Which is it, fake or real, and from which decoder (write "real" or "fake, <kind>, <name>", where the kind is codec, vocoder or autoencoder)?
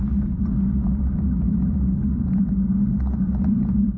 real